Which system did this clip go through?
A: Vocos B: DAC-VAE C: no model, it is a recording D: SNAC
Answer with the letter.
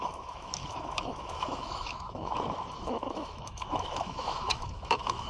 B